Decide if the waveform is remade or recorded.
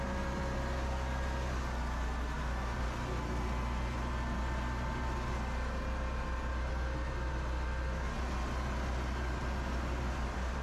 recorded